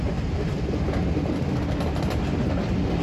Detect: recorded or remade recorded